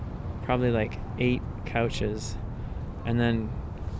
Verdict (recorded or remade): recorded